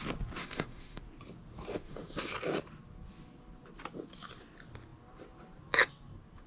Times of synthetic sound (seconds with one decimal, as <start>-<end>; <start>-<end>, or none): 0.4-1.0; 1.7-2.3